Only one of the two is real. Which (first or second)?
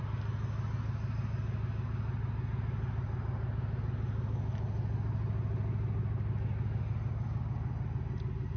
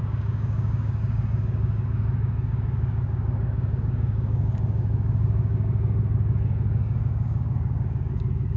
first